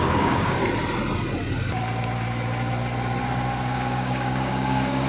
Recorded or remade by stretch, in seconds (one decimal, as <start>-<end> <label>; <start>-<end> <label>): 0.0-0.6 remade; 0.6-3.6 recorded; 3.6-5.1 remade